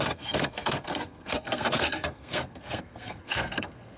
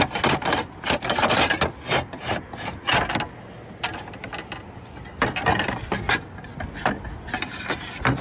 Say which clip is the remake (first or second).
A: first